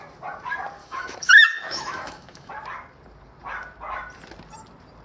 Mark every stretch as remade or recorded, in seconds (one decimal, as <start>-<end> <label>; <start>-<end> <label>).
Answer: 0.0-0.8 recorded; 0.8-2.5 remade; 2.5-5.0 recorded